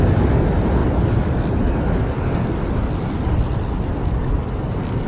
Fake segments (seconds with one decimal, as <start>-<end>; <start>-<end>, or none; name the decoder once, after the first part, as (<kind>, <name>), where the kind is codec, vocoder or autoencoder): none